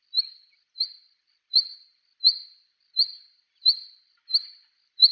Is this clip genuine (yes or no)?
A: yes